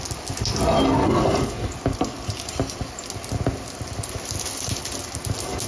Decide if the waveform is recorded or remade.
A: recorded